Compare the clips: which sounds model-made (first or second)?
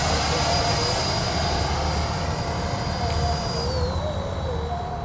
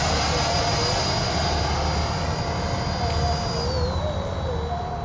first